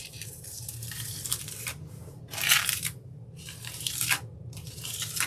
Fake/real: fake